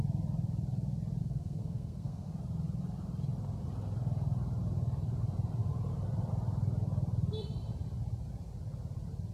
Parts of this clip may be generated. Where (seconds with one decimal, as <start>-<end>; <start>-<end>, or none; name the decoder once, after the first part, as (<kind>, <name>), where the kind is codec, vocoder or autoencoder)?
1.2-2.3 (codec, SNAC)